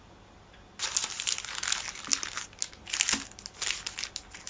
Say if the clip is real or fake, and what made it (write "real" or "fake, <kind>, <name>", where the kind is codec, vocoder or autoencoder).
real